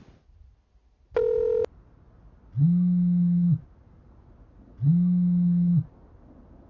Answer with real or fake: real